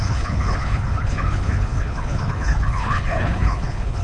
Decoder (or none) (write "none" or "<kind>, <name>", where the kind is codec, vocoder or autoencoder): codec, HILCodec